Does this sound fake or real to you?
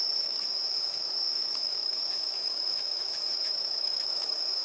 fake